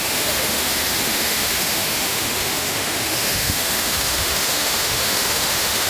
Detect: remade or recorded remade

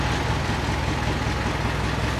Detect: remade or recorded recorded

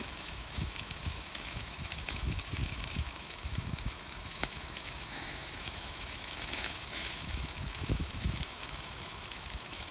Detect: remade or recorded remade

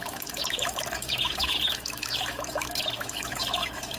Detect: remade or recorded remade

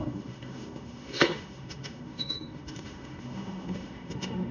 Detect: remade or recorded remade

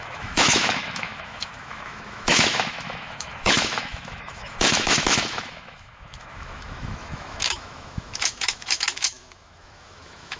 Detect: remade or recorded remade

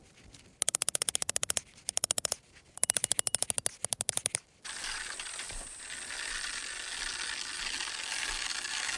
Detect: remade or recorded recorded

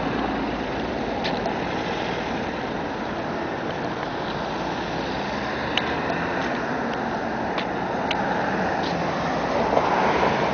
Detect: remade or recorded recorded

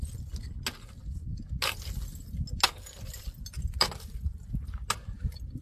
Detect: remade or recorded recorded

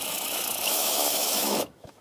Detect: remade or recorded remade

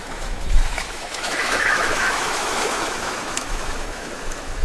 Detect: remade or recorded remade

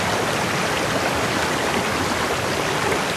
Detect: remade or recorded recorded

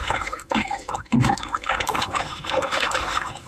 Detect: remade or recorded remade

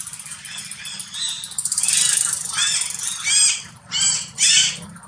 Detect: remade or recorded recorded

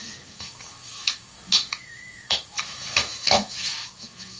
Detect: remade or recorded remade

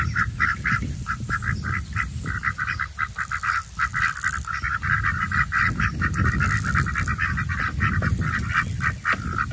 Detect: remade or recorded recorded